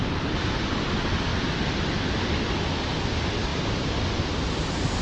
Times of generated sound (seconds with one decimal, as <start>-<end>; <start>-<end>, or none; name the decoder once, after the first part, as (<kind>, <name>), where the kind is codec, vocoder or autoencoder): none